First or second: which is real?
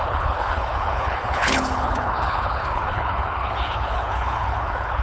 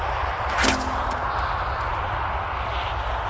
second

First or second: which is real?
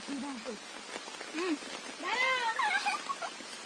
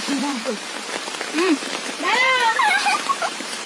first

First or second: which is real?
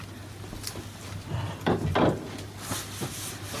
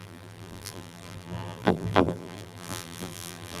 first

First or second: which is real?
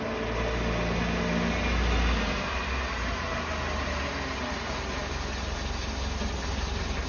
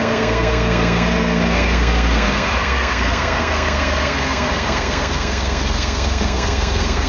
first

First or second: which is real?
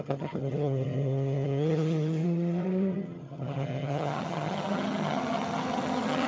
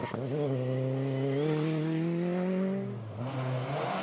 second